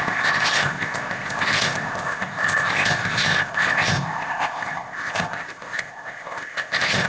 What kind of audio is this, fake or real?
fake